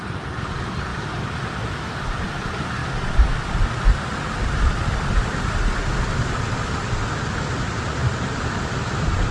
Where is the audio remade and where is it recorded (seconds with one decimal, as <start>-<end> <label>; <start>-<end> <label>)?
0.0-9.3 recorded